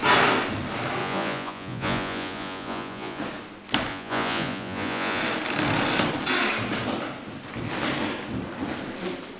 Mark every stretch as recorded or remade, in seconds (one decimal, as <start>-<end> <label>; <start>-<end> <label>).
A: 0.0-1.0 recorded; 1.0-3.2 remade; 3.2-3.9 recorded; 3.9-5.2 remade; 5.2-9.4 recorded